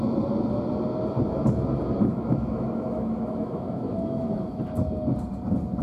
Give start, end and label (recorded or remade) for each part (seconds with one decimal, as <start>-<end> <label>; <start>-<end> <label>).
0.0-2.1 recorded; 2.1-4.6 remade; 4.6-5.8 recorded